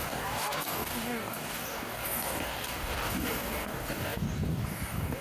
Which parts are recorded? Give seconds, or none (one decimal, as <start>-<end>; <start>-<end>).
none